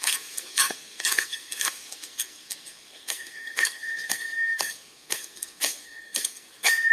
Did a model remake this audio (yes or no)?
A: yes